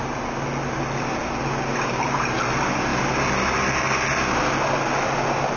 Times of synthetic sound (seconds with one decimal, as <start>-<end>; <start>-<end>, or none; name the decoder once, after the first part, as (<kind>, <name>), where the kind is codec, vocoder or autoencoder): none